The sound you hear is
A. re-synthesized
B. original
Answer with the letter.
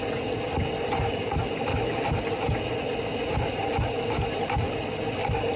B